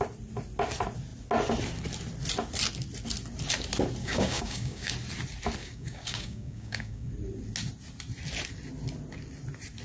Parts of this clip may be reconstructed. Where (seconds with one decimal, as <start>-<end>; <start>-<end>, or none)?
4.0-4.9; 5.6-7.1